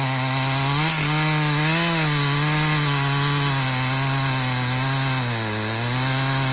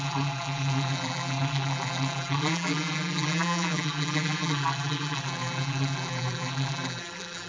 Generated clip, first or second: second